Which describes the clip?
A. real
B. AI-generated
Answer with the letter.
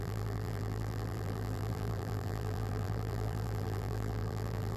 B